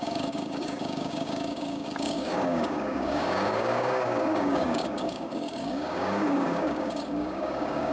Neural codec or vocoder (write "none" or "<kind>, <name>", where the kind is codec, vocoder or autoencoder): codec, DAC